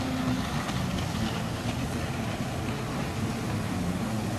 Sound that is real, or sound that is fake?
real